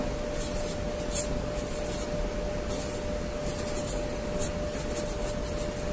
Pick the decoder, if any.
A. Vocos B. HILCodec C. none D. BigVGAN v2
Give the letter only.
C